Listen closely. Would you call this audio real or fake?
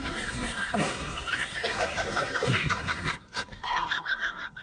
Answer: fake